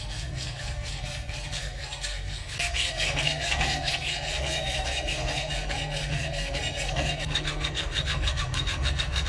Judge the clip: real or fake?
fake